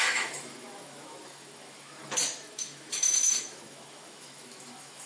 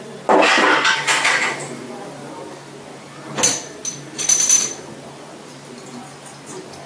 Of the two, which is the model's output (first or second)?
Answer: first